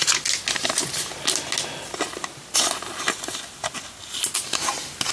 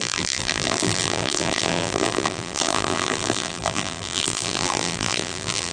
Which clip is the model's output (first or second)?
second